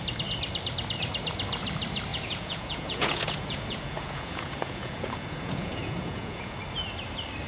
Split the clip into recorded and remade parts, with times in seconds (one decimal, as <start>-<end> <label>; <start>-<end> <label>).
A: 0.0-2.1 recorded; 2.1-6.6 remade; 6.6-7.5 recorded